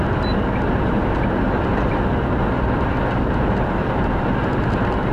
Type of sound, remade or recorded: recorded